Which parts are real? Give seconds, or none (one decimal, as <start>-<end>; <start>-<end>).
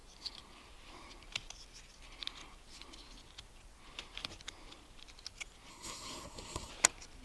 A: 0.0-5.7; 6.7-7.2